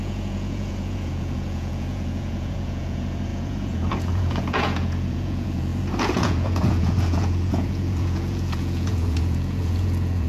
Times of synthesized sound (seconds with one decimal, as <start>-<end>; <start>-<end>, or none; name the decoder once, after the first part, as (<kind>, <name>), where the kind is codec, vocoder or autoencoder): 0.0-10.3 (vocoder, Vocos)